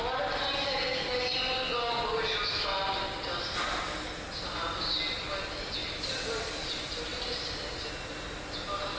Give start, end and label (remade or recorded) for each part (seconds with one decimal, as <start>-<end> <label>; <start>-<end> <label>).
0.0-9.0 recorded